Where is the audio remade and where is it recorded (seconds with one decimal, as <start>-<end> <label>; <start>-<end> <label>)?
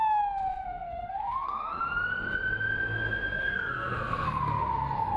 0.0-0.5 recorded; 0.5-1.8 remade; 1.8-3.4 recorded; 3.4-4.4 remade; 4.4-5.2 recorded